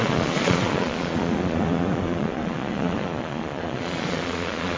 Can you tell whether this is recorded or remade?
remade